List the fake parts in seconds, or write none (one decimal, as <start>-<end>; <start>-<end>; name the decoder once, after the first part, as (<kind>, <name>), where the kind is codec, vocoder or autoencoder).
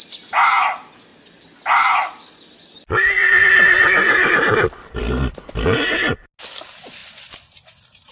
1.1-5.0 (vocoder, BigVGAN v2)